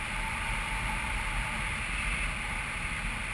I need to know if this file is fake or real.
real